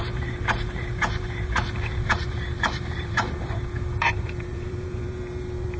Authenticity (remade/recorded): remade